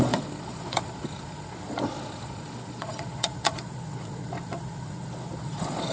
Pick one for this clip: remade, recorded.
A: remade